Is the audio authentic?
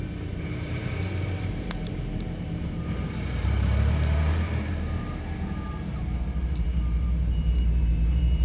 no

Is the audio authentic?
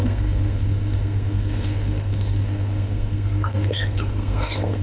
no